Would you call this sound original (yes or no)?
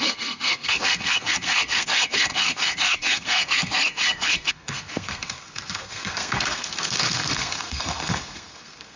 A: no